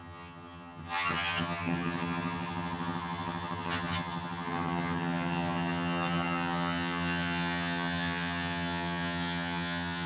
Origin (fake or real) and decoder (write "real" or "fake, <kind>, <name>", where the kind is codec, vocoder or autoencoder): fake, vocoder, HiFi-GAN